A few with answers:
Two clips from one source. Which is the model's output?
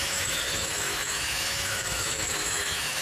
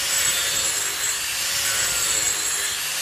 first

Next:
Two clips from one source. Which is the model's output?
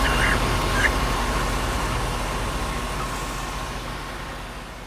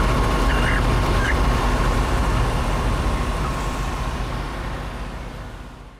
second